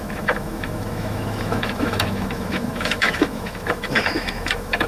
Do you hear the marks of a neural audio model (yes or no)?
yes